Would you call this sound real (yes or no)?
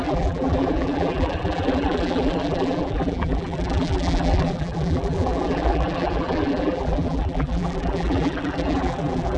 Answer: no